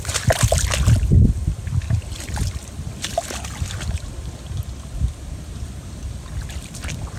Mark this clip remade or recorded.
recorded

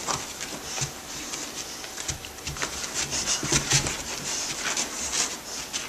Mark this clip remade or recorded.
recorded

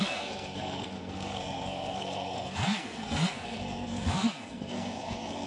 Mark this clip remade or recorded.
remade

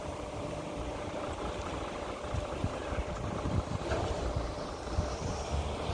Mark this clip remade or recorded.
remade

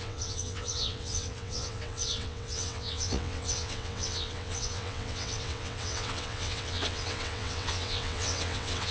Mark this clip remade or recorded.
remade